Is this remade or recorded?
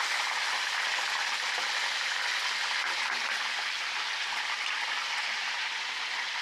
recorded